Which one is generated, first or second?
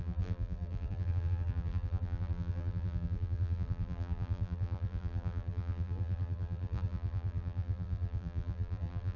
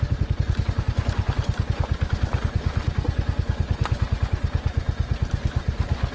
first